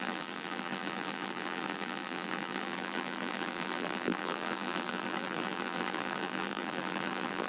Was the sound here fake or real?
fake